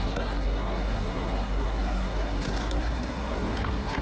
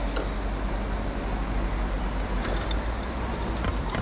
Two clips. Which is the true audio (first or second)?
second